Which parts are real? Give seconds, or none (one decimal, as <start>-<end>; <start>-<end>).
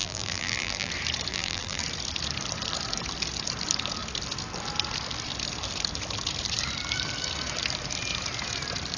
0.9-1.3; 1.8-9.0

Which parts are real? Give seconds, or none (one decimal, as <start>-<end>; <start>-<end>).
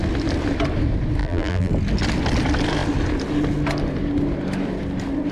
0.0-1.2; 1.7-5.3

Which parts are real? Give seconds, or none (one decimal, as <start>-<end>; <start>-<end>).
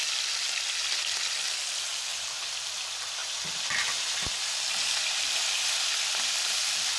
0.0-2.1; 2.7-7.0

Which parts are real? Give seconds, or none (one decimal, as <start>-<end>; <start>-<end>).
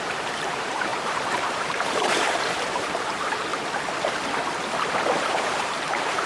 3.5-5.2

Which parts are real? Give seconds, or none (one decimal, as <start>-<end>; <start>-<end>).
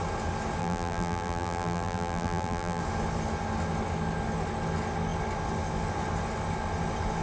0.0-0.6; 2.8-7.2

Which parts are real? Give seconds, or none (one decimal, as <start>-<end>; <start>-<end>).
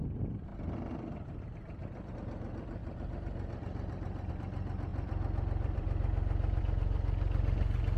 0.0-0.5; 2.1-2.8; 4.3-4.9; 6.6-8.0